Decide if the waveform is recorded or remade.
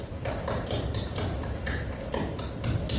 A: recorded